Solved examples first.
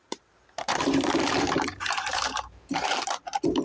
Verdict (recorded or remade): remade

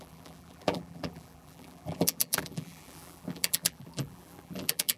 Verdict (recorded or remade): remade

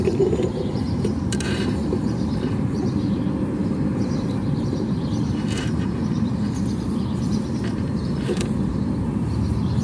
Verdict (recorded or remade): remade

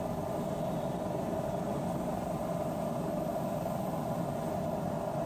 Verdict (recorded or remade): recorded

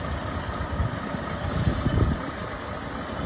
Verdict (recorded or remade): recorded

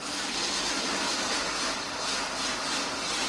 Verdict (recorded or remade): recorded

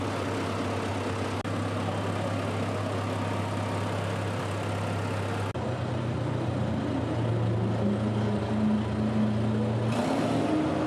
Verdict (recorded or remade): recorded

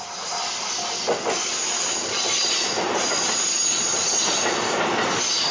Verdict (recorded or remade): recorded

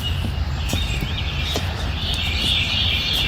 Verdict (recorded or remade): remade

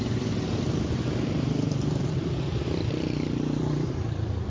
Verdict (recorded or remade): remade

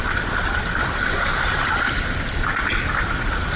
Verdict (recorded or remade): remade